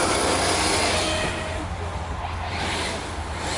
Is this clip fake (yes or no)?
no